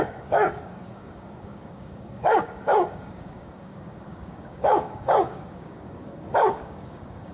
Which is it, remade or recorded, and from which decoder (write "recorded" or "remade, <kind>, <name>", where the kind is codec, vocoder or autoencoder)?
remade, codec, DAC